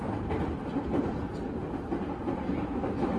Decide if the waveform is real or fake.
real